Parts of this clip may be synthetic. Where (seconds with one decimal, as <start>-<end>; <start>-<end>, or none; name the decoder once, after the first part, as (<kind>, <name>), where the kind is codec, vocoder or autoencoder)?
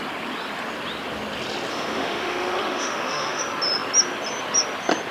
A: 1.7-3.4 (autoencoder, DAC-VAE)